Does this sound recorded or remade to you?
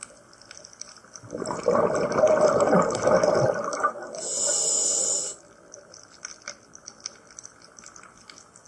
recorded